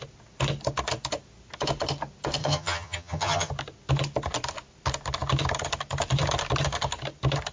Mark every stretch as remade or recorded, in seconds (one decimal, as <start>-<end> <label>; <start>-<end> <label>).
0.0-2.4 recorded; 2.4-3.5 remade; 3.5-7.5 recorded